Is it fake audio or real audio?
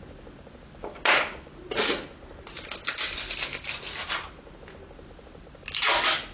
real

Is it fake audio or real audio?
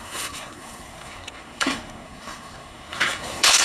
fake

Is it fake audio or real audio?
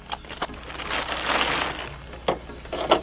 real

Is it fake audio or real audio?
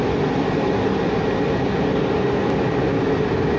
real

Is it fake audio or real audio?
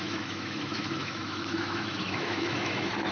fake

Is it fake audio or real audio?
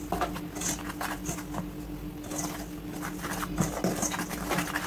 real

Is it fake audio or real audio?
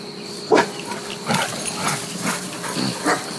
real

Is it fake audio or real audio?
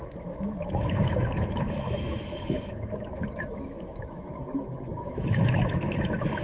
fake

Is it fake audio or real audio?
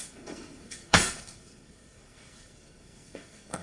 fake